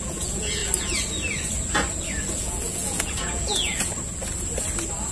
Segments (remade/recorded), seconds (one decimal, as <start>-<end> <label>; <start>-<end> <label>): 0.0-0.6 remade; 0.6-2.4 recorded; 2.4-3.7 remade; 3.7-5.1 recorded